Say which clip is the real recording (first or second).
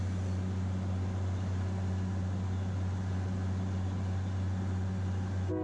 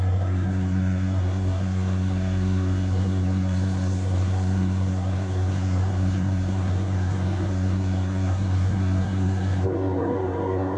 first